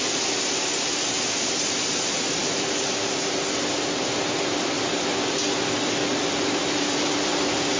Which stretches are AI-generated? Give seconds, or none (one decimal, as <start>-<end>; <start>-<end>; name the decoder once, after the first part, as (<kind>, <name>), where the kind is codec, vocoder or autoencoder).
none